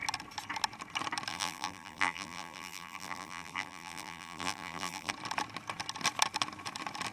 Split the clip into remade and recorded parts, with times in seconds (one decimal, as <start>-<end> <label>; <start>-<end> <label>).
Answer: 0.0-1.3 recorded; 1.3-5.1 remade; 5.1-7.1 recorded